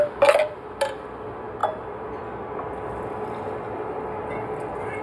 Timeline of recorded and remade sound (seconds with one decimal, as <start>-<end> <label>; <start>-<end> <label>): 0.0-1.6 recorded; 1.6-2.2 remade; 2.2-5.0 recorded